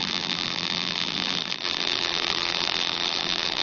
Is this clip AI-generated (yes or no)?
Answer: yes